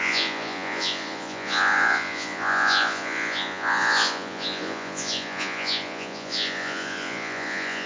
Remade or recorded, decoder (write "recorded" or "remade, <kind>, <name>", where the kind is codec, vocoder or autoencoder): remade, vocoder, Vocos